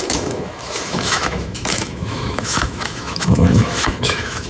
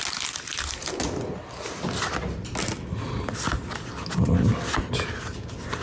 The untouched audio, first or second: second